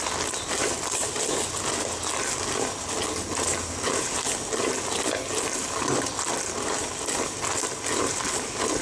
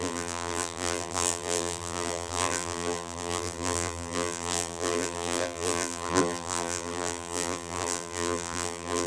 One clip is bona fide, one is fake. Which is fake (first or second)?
second